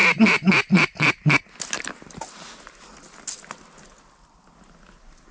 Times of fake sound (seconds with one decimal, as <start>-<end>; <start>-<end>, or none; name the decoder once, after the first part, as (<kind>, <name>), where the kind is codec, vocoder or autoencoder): 0.0-1.4 (vocoder, BigVGAN v2)